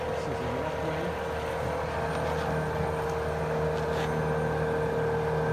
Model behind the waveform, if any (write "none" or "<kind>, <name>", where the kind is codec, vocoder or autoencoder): none